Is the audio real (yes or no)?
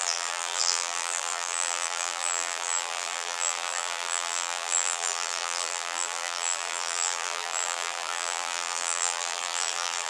no